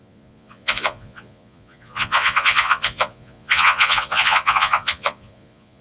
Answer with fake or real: fake